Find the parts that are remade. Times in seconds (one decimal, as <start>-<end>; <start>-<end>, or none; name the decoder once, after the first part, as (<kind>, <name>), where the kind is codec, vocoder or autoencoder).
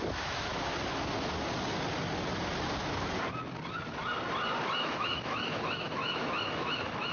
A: 0.0-0.5 (autoencoder, DAC-VAE); 4.8-7.1